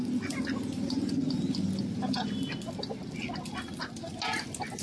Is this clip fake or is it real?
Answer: real